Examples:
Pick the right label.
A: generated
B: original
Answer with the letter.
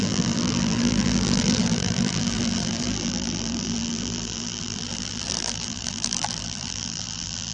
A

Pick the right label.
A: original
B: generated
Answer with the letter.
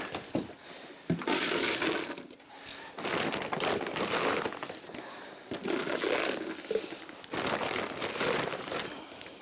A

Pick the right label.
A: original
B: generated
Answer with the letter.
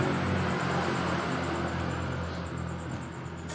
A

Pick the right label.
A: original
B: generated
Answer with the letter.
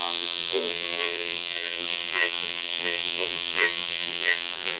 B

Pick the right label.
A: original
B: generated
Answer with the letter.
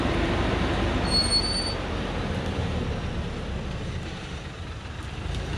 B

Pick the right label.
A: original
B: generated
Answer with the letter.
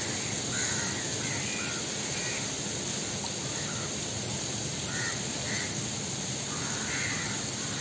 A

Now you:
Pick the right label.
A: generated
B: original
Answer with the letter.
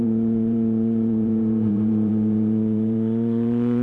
A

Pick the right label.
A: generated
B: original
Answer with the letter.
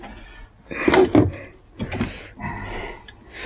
B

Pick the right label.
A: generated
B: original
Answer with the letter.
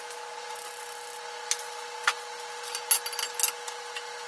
B